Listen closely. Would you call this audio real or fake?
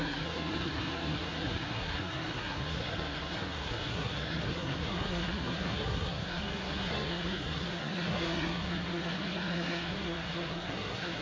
fake